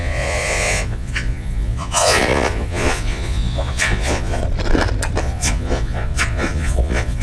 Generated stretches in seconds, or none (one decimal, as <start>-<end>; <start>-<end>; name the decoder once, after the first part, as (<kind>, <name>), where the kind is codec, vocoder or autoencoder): 0.0-4.4 (vocoder, Vocos); 5.2-7.2